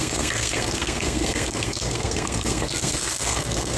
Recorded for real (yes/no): no